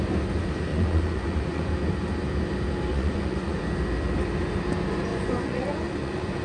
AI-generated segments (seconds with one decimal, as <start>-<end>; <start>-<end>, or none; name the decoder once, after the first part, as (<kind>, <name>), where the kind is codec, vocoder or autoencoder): 0.7-1.7 (vocoder, Vocos); 2.9-3.6; 5.1-6.4